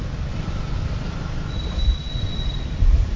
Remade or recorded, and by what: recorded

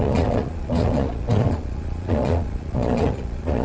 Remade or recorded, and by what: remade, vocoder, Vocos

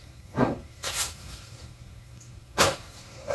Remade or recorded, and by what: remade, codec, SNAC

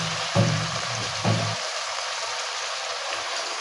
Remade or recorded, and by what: remade, vocoder, BigVGAN v2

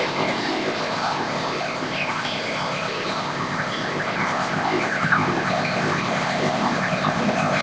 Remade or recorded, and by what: remade, codec, ZipCodec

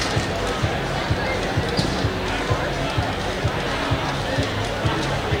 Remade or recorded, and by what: recorded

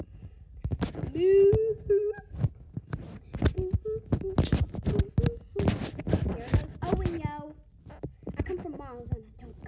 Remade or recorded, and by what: recorded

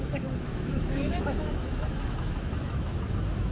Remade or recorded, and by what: remade, autoencoder, DAC-VAE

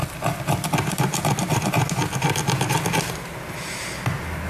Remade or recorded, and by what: recorded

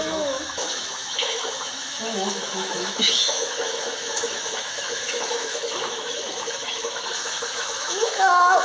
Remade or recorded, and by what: remade, autoencoder, DAC-VAE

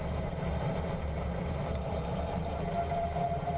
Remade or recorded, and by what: remade, vocoder, BigVGAN v2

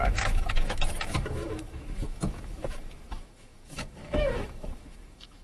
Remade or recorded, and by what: remade, autoencoder, DAC-VAE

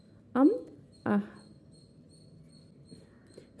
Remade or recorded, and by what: recorded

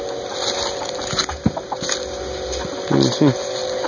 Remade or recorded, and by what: recorded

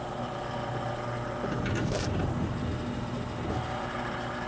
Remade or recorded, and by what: recorded